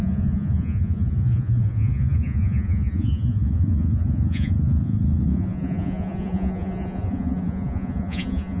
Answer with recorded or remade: remade